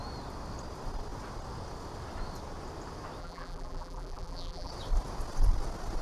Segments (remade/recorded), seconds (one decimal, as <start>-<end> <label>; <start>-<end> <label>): 0.0-3.2 recorded; 3.2-4.7 remade; 4.7-6.0 recorded